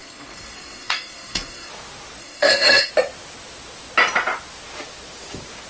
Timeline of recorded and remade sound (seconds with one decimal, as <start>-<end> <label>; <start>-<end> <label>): 0.0-1.7 remade; 1.7-2.2 recorded; 2.2-2.9 remade; 2.9-5.7 recorded